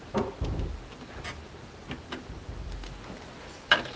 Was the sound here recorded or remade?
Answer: recorded